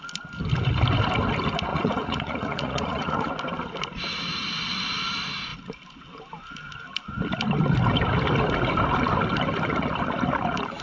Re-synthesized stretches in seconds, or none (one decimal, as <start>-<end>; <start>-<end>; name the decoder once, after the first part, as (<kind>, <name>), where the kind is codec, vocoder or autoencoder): 1.7-3.3 (vocoder, Vocos)